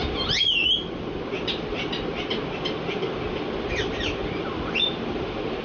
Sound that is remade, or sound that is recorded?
recorded